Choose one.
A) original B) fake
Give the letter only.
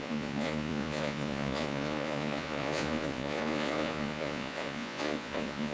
B